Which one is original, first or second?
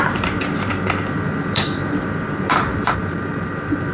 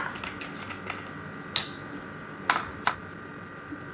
second